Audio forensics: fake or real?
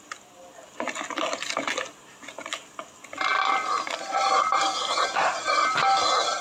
real